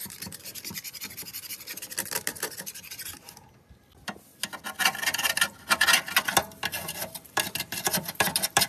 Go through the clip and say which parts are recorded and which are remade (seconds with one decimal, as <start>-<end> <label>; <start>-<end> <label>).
0.0-8.7 recorded